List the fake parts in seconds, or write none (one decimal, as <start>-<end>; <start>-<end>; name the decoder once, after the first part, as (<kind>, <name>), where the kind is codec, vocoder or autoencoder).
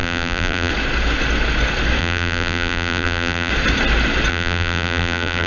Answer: 0.0-0.7 (vocoder, BigVGAN v2); 2.0-3.5; 4.3-5.5